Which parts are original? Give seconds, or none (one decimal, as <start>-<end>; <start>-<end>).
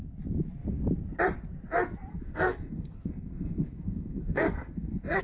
0.0-2.1